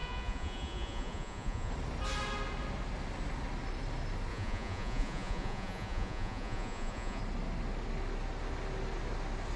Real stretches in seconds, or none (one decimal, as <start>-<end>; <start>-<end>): 1.7-4.3; 7.2-9.6